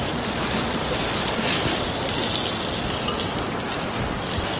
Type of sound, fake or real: real